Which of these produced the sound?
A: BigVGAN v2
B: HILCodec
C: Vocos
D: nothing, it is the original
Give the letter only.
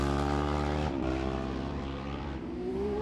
A